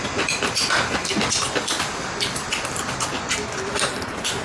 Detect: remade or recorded recorded